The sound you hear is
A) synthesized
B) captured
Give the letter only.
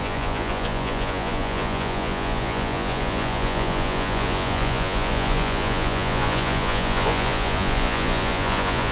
A